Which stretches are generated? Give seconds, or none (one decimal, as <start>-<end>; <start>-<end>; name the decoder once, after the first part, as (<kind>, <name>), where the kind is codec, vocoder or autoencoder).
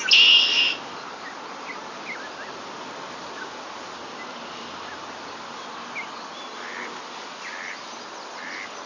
none